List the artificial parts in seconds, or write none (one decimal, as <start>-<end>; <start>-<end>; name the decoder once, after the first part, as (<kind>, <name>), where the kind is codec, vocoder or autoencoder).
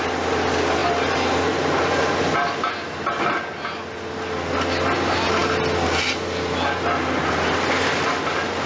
none